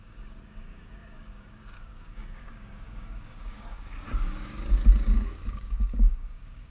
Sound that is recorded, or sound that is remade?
remade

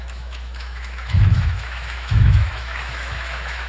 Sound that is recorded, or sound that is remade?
remade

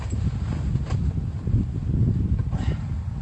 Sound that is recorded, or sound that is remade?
recorded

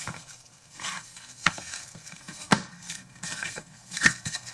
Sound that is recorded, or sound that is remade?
remade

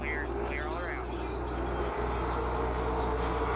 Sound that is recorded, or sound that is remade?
recorded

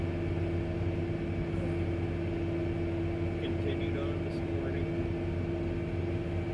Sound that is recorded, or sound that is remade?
recorded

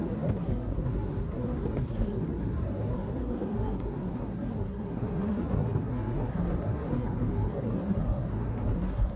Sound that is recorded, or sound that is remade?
remade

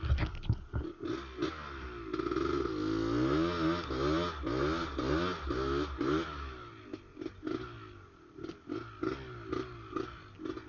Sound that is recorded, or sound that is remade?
recorded